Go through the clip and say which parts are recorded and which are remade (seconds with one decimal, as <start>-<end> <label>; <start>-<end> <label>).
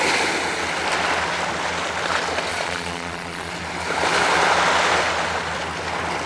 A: 0.0-2.5 recorded; 2.5-3.5 remade; 3.5-6.3 recorded